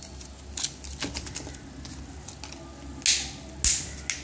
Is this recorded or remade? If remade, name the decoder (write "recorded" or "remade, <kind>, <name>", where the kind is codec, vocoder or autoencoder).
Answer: recorded